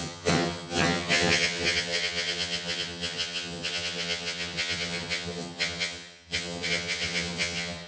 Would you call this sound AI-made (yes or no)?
yes